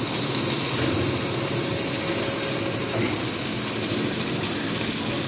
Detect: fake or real real